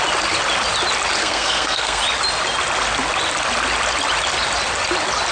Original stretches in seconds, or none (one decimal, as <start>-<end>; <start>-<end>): 0.0-1.2; 2.0-5.3